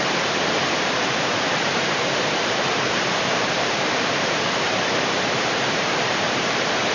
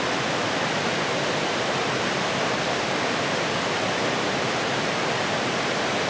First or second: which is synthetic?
first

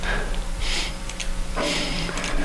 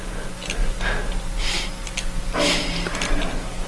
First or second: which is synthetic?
first